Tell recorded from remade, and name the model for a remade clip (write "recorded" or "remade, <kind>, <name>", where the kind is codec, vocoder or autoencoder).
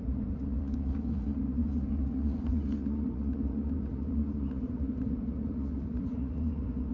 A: remade, vocoder, Vocos